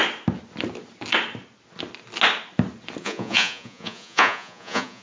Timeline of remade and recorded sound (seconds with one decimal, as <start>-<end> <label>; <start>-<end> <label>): 0.0-3.0 recorded; 3.0-5.0 remade